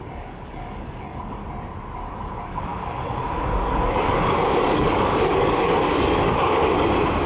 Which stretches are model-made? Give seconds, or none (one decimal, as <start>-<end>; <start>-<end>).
0.0-1.4; 2.0-6.6